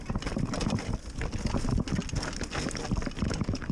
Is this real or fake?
real